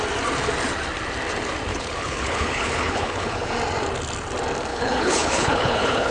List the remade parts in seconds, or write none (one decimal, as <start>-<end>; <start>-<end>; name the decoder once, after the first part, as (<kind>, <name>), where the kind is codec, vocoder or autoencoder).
1.7-3.5 (codec, HILCodec); 4.7-6.1